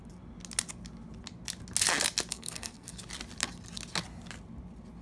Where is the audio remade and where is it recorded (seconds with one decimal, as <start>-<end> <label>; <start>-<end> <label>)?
0.0-2.3 recorded; 2.3-3.0 remade; 3.0-5.0 recorded